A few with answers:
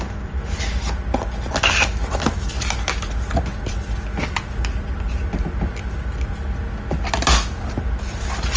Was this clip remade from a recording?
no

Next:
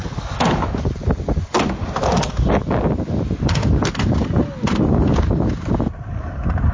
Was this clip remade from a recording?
no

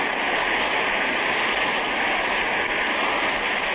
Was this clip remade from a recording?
no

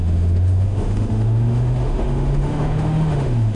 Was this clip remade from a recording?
yes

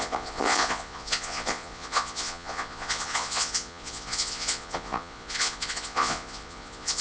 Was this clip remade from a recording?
yes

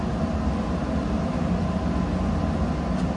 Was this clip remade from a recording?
no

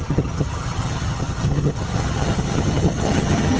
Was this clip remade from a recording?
yes